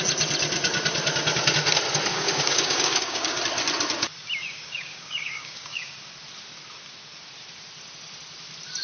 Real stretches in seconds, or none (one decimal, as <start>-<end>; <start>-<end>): 0.0-2.1; 3.4-4.4; 5.9-8.8